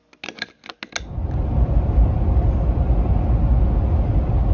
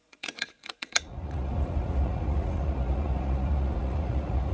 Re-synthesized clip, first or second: second